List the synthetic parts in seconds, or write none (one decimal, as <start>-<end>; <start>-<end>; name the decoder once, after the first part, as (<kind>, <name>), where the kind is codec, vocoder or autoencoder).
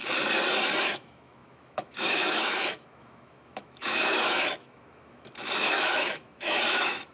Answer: 0.8-7.1 (autoencoder, DAC-VAE)